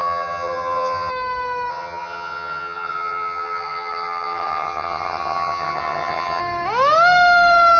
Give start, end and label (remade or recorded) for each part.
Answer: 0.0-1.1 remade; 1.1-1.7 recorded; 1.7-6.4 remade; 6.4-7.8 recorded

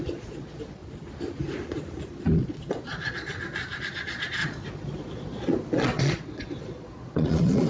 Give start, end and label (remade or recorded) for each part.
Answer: 0.0-0.8 remade; 0.8-2.2 recorded; 2.2-3.3 remade; 3.3-3.9 recorded; 3.9-7.7 remade

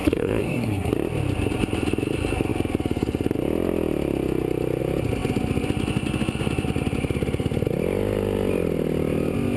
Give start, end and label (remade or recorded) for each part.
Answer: 0.0-0.9 remade; 0.9-9.6 recorded

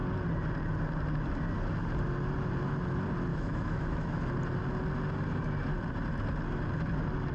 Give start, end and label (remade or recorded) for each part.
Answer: 0.0-3.3 recorded; 3.3-4.2 remade; 4.2-7.3 recorded

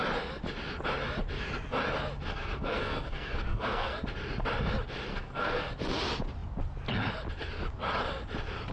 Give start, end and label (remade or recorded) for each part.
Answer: 0.0-2.3 recorded; 2.3-4.0 remade; 4.0-5.1 recorded; 5.1-5.7 remade; 5.7-8.7 recorded

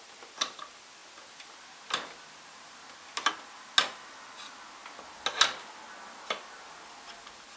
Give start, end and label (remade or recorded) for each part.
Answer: 0.0-7.6 recorded

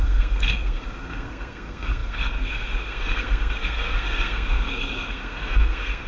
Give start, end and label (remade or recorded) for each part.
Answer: 0.0-6.1 remade

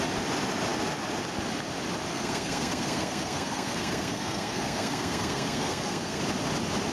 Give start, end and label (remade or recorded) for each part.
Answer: 0.0-2.1 recorded; 2.1-6.2 remade; 6.2-6.9 recorded